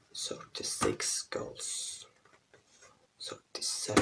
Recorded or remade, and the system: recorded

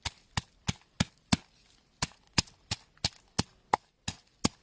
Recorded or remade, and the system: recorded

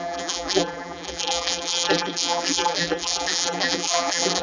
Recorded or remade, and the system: remade, vocoder, BigVGAN v2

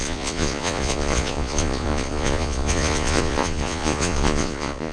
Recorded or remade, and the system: remade, vocoder, Vocos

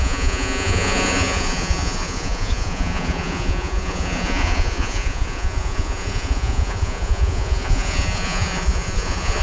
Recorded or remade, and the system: remade, vocoder, Vocos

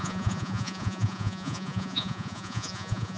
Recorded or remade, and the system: remade, vocoder, Vocos